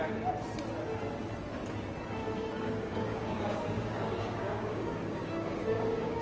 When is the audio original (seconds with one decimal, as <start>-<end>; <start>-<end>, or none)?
0.0-2.2